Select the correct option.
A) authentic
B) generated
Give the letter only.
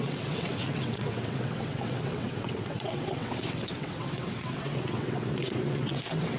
B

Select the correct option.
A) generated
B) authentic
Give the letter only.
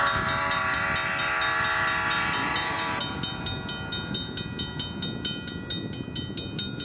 B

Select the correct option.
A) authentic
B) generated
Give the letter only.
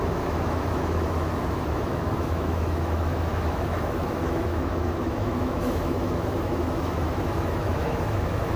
B